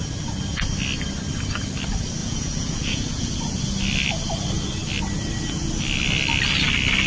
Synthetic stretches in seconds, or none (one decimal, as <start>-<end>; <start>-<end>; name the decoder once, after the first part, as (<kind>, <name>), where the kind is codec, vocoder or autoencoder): 2.2-3.3 (vocoder, Vocos)